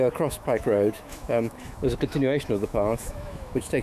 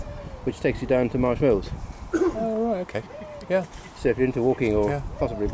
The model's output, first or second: first